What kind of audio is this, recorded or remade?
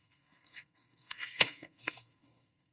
remade